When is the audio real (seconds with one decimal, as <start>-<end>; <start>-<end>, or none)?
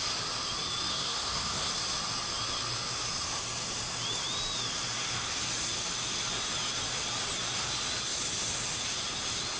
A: 0.0-0.9; 1.7-9.6